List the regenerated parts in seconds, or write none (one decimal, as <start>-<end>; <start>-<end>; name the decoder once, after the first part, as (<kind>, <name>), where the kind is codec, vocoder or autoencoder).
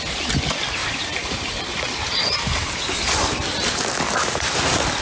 0.8-3.8 (vocoder, BigVGAN v2)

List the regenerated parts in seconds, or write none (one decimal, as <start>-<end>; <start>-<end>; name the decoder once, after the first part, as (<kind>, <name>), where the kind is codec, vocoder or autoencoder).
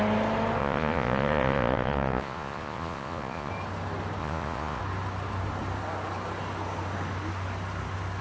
0.6-3.5 (vocoder, Vocos); 4.2-4.8